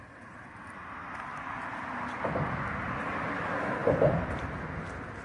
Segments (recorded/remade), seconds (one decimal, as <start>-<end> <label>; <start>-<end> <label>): 0.0-5.2 recorded